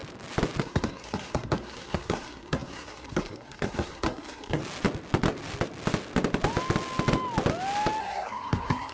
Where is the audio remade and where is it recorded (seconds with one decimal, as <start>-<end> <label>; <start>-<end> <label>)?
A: 0.0-0.6 recorded; 0.6-4.6 remade; 4.6-8.0 recorded; 8.0-8.9 remade